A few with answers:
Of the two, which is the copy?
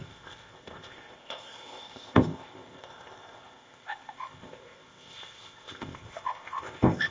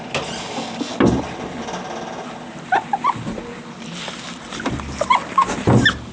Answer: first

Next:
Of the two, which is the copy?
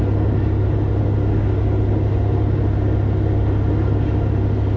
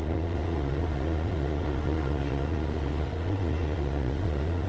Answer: second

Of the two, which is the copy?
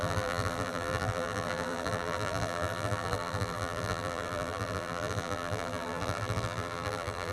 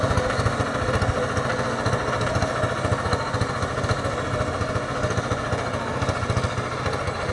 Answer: first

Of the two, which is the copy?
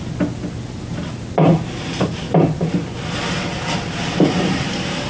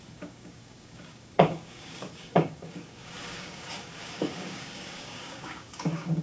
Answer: second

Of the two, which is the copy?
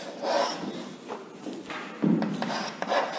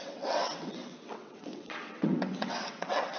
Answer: second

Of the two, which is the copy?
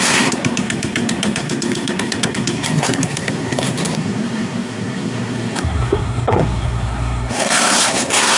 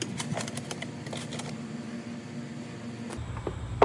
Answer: first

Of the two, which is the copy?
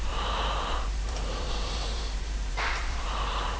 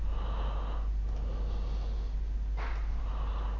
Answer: first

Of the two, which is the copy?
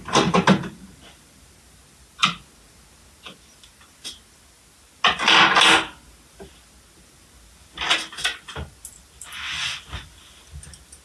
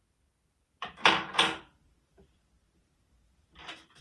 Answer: second